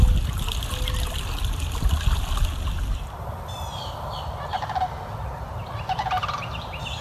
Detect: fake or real real